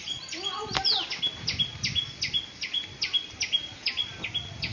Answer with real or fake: real